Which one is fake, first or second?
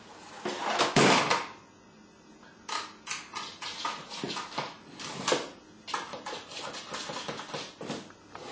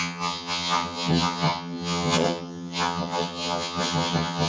second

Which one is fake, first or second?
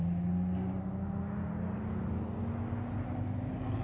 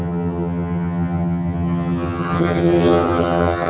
second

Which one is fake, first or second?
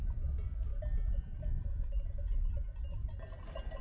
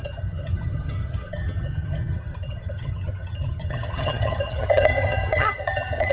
second